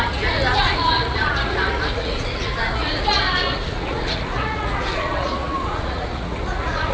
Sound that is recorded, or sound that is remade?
remade